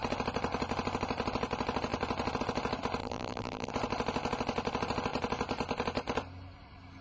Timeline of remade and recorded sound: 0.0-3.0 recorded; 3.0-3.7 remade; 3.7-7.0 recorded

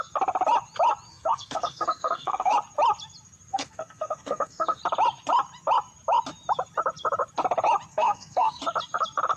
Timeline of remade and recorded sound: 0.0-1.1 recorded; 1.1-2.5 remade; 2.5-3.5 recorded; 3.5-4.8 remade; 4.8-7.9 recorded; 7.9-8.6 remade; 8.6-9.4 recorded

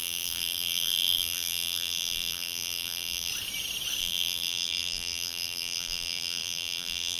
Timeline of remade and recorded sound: 0.0-3.3 remade; 3.3-4.0 recorded; 4.0-7.2 remade

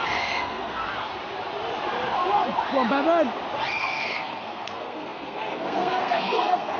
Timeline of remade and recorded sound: 0.0-0.8 remade; 0.8-3.8 recorded; 3.8-6.8 remade

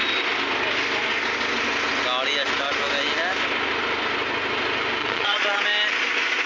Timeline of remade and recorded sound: 0.0-5.0 recorded; 5.0-5.6 remade; 5.6-6.5 recorded